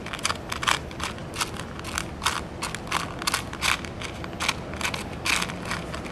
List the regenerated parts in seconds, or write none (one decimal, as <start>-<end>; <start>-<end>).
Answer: none